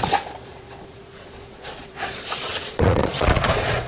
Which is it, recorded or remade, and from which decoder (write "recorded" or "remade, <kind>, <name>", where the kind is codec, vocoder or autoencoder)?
remade, vocoder, Vocos